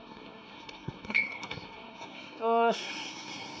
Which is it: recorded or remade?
remade